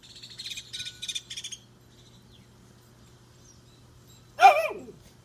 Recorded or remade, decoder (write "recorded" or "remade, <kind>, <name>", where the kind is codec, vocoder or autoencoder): recorded